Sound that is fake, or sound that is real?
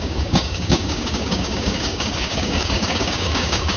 fake